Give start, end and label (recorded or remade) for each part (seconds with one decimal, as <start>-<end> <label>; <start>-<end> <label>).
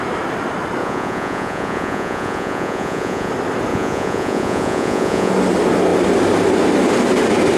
0.0-0.8 recorded; 0.8-3.3 remade; 3.3-3.7 recorded; 3.7-5.3 remade; 5.3-7.6 recorded